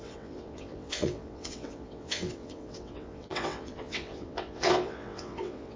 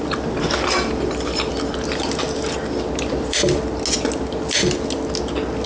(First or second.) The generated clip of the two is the first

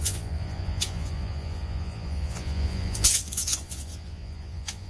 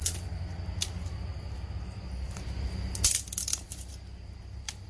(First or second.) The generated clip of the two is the first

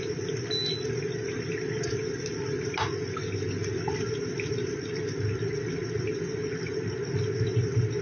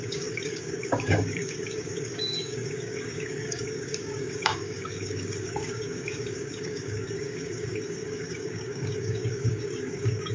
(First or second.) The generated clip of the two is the second